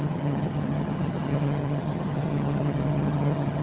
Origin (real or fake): fake